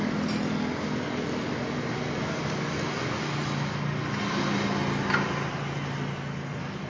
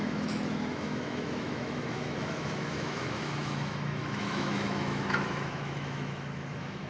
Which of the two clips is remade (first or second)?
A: second